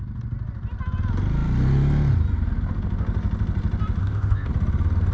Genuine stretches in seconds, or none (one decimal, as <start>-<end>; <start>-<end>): 0.0-4.0; 4.5-5.1